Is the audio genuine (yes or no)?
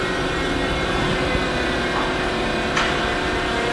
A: yes